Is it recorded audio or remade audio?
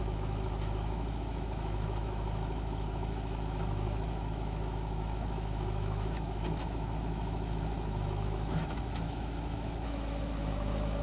remade